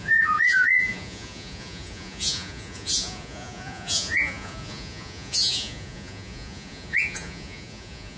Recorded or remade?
remade